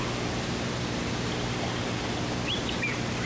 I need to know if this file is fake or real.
real